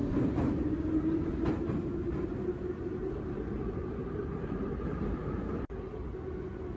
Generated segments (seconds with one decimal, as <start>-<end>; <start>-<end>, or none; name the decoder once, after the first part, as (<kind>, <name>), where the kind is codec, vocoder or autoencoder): 0.0-0.5 (vocoder, BigVGAN v2); 3.0-5.5